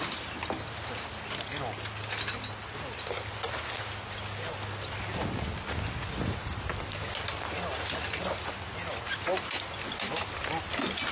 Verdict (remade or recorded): recorded